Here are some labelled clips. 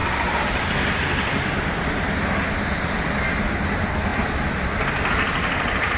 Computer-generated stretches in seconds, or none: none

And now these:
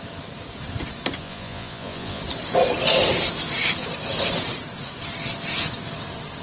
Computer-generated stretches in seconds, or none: 1.2-2.2 (vocoder, Vocos)

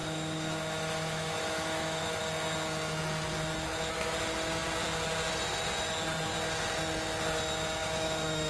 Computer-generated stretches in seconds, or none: 0.0-2.2 (autoencoder, DAC-VAE); 7.8-8.5